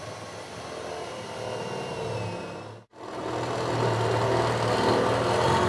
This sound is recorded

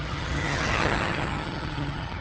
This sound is remade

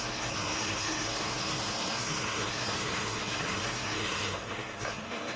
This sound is remade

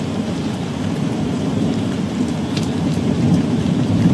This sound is remade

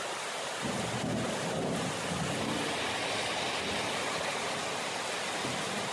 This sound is recorded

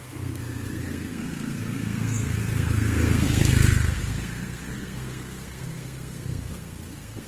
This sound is remade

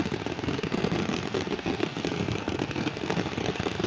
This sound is remade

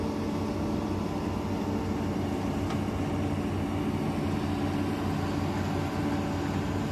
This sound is recorded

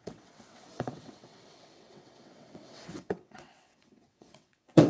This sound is remade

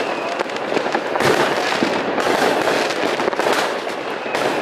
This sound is recorded